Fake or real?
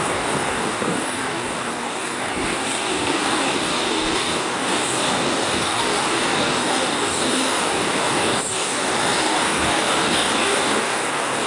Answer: fake